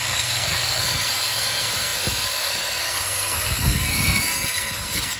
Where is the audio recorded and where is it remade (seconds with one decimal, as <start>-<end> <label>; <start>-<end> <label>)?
0.0-5.2 remade